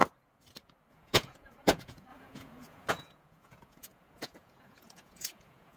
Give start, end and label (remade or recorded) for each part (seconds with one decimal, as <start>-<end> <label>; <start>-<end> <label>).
0.0-0.9 recorded; 0.9-5.8 remade

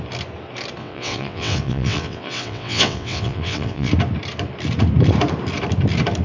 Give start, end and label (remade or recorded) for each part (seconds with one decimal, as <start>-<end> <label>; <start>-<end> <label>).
0.0-0.8 recorded; 0.8-3.9 remade; 3.9-6.2 recorded

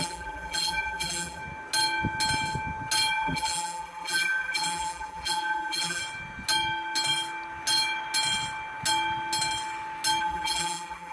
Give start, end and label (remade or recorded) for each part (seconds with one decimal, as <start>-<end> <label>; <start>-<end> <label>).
0.0-1.4 remade; 1.4-3.1 recorded; 3.1-6.0 remade; 6.0-10.2 recorded; 10.2-11.1 remade